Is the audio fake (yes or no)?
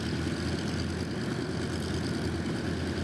no